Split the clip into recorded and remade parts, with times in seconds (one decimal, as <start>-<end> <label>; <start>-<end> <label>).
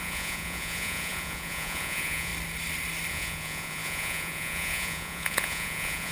0.0-2.3 remade; 2.3-3.1 recorded; 3.1-6.1 remade